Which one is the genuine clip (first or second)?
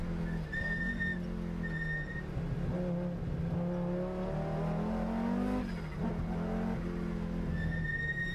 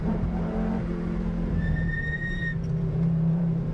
first